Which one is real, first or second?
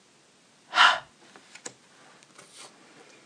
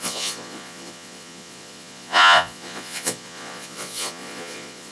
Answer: first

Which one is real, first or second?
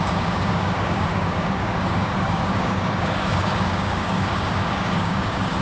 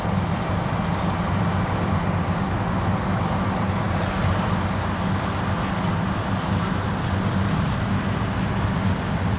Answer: second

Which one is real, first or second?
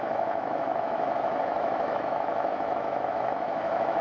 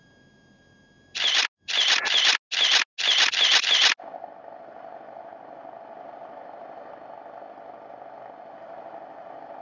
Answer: second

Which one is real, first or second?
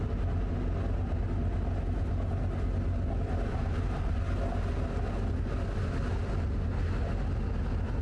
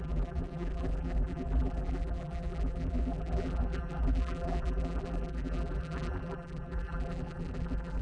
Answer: first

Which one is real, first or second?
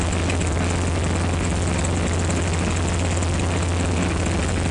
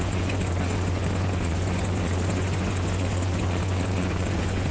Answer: first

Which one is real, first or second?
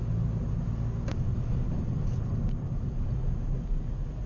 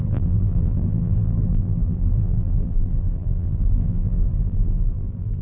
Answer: first